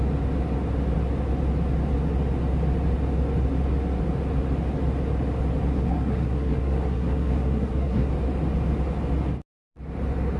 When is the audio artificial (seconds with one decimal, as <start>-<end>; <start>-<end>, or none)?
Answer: 5.7-8.1